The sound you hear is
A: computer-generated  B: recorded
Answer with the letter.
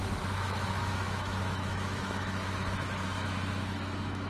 A